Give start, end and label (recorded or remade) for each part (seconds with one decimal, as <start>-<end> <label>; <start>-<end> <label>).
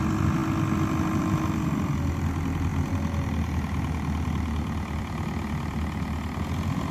0.0-6.9 recorded